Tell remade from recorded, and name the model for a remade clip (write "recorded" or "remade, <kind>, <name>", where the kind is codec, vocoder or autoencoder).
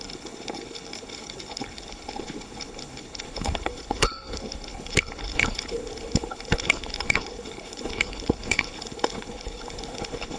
remade, codec, HILCodec